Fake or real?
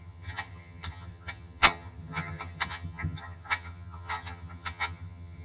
fake